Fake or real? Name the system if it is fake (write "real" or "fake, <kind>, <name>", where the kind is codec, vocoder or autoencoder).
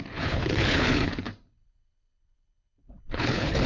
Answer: fake, codec, HILCodec